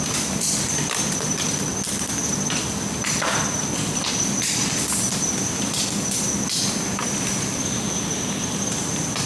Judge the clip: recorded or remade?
recorded